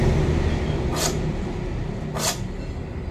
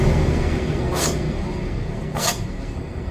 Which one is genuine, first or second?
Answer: first